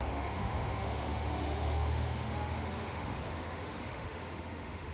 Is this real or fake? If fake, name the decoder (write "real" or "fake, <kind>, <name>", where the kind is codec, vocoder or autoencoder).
fake, autoencoder, DAC-VAE